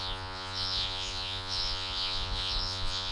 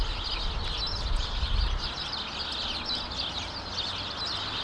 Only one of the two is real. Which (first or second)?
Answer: second